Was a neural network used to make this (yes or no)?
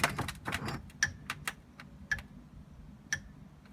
no